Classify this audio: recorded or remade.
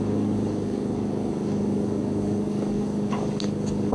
remade